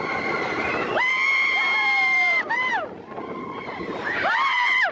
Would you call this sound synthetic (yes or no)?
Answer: yes